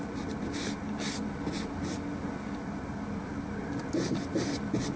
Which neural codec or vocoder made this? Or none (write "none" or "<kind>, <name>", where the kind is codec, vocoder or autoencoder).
none